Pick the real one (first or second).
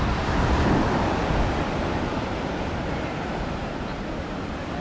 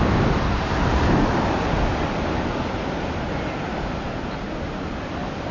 second